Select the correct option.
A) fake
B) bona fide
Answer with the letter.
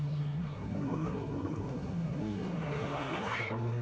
A